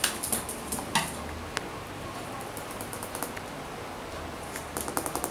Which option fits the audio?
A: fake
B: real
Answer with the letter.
B